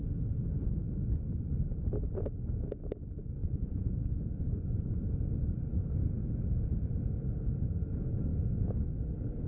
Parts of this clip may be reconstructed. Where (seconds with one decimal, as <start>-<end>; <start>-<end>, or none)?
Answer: 3.4-3.9